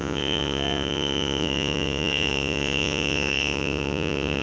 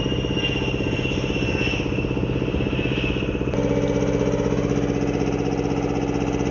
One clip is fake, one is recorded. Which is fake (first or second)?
first